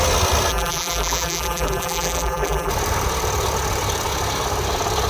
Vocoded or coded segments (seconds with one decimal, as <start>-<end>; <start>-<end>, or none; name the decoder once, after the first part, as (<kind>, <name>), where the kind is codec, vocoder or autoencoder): 0.5-2.7 (vocoder, BigVGAN v2)